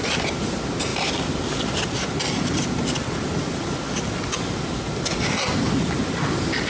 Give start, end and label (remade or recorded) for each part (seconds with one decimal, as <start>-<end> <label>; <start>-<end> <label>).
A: 0.0-6.7 recorded